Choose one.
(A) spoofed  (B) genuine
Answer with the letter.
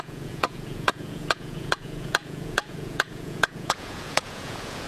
A